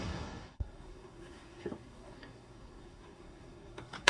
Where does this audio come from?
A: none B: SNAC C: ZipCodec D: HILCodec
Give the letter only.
B